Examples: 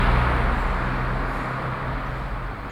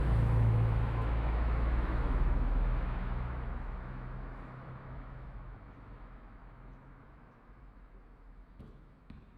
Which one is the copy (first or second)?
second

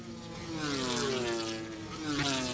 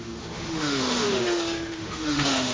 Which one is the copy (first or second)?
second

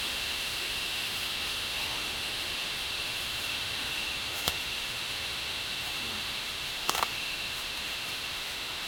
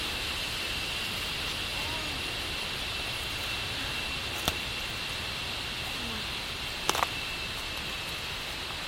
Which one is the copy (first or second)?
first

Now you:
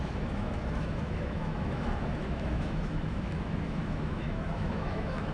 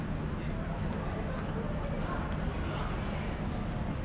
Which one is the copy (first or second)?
first